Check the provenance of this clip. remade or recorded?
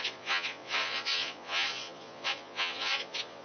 remade